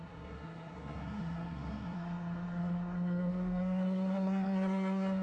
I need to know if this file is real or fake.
fake